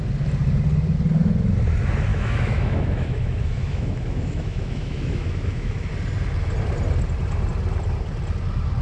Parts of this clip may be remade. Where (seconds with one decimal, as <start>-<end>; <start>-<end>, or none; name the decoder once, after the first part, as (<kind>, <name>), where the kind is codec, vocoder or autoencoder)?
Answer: 2.1-5.9 (autoencoder, DAC-VAE)